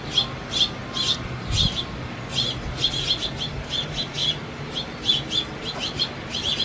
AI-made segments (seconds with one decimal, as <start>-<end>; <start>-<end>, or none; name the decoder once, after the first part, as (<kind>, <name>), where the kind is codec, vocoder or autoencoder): none